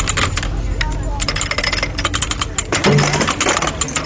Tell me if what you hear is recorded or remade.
recorded